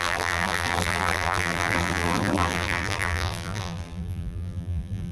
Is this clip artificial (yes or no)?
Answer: yes